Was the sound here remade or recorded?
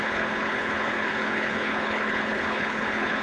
remade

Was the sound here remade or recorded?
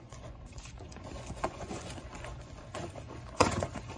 remade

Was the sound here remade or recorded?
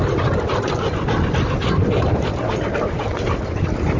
recorded